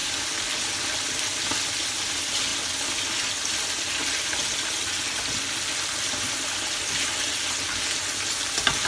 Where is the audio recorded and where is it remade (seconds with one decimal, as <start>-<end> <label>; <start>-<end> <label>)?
0.0-8.9 recorded